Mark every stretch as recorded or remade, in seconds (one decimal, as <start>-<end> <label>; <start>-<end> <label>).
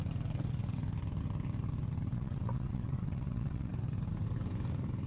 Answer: 0.0-2.1 recorded; 2.1-3.7 remade; 3.7-5.1 recorded